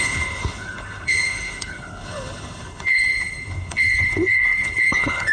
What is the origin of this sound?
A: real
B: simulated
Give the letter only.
B